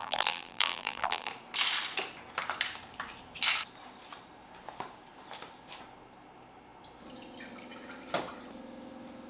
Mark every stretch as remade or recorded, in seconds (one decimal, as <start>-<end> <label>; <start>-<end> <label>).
0.0-1.3 remade; 1.3-9.3 recorded